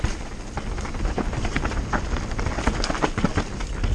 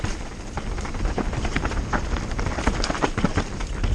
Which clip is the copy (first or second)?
second